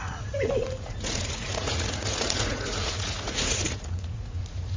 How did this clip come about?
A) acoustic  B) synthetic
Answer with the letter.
B